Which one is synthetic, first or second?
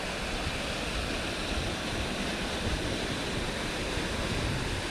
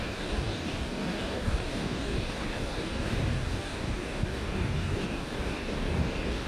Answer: second